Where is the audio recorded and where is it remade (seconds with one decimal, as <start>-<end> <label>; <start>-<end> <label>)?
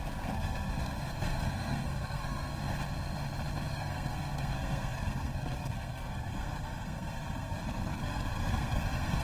0.0-2.5 remade; 2.5-3.7 recorded; 3.7-9.2 remade